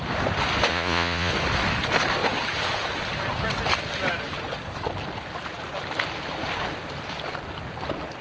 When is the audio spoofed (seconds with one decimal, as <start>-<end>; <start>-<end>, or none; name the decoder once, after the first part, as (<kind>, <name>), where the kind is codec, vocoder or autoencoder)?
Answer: 0.7-1.3 (vocoder, Vocos)